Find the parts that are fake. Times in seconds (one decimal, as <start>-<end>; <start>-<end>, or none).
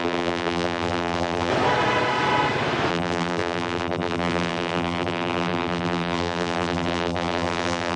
0.0-1.5; 2.9-8.0